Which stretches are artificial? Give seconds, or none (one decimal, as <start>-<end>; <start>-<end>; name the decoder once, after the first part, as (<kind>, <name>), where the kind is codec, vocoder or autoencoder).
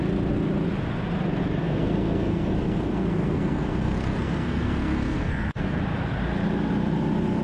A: 1.6-5.8 (codec, SNAC)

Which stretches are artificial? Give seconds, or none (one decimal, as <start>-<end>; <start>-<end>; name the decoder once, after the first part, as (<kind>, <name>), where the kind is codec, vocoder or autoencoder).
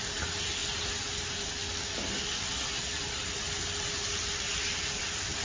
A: none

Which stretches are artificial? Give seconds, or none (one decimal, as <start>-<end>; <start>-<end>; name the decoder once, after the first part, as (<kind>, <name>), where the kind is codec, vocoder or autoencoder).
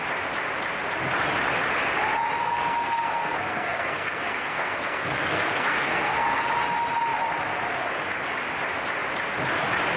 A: 2.4-6.6 (codec, SNAC)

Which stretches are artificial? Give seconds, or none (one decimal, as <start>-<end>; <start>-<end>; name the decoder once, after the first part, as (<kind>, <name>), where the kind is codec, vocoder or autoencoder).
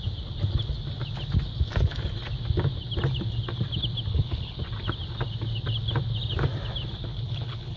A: 4.1-4.6 (codec, HILCodec); 7.1-7.8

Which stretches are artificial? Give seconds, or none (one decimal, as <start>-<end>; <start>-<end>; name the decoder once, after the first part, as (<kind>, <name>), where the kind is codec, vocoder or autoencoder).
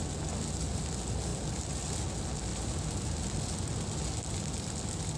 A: none